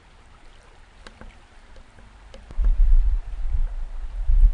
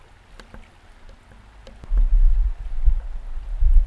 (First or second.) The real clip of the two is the second